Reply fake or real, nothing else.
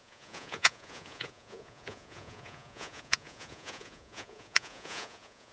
fake